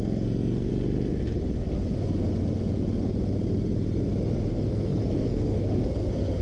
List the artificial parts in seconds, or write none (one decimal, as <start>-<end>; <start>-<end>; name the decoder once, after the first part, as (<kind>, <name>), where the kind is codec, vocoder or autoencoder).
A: 0.0-0.7 (codec, SNAC); 4.5-6.4